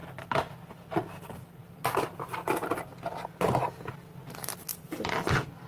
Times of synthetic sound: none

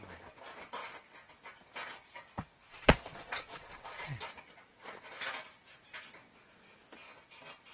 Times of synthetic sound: 2.7-4.2 (vocoder, Vocos)

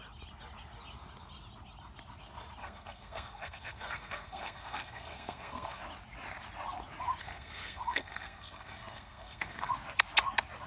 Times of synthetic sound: 2.6-5.8 (codec, SNAC); 7.2-9.7

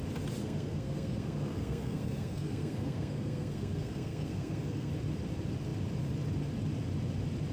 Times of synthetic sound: 0.4-4.9 (codec, SNAC)